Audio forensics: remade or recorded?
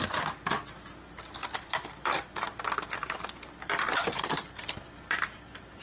recorded